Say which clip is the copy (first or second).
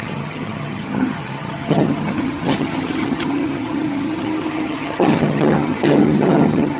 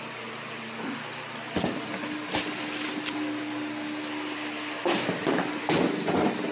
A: first